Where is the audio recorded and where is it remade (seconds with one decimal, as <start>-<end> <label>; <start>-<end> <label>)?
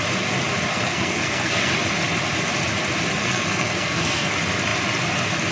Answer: 0.0-0.7 recorded; 0.7-1.7 remade; 1.7-3.2 recorded; 3.2-4.3 remade; 4.3-5.5 recorded